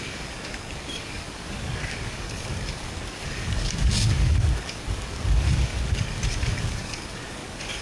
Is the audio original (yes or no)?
no